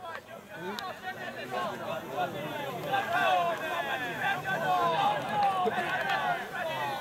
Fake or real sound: real